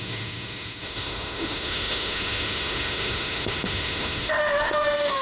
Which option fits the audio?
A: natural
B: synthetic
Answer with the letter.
B